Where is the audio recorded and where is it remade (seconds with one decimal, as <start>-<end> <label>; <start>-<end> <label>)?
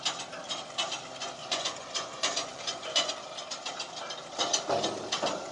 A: 0.0-1.4 recorded; 1.4-3.1 remade; 3.1-5.5 recorded